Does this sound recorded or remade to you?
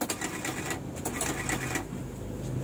recorded